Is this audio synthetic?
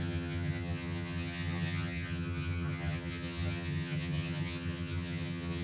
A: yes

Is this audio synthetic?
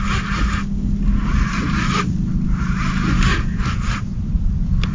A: no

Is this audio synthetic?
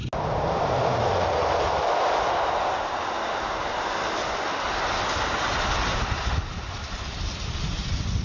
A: no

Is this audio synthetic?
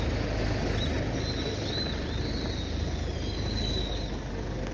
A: no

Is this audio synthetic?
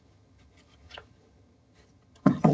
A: yes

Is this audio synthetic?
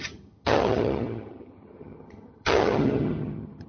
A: yes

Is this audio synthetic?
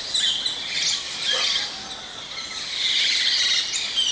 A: no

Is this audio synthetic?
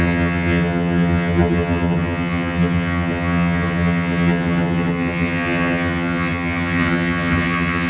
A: yes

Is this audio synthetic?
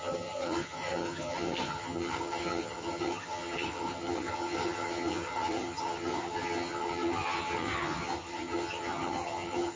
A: yes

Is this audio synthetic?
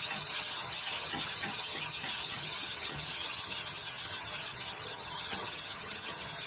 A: yes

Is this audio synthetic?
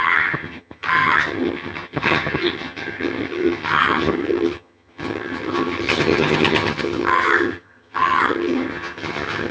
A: yes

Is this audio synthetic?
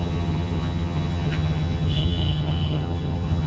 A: yes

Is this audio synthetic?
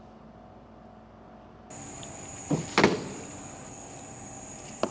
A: no